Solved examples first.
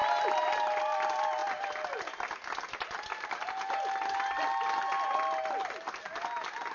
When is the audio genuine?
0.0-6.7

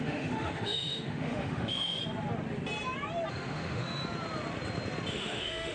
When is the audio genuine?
2.0-3.3; 4.0-5.1

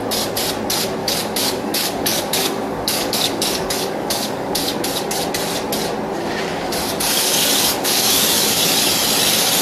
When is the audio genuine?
0.0-1.0; 5.2-6.5; 8.9-9.6

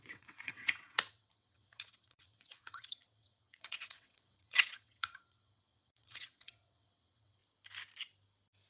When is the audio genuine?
7.4-8.7

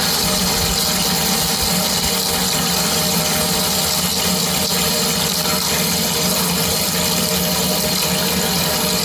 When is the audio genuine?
0.0-9.0

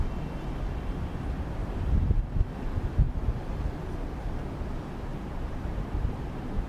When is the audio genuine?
0.0-1.6; 2.3-3.3; 4.4-5.1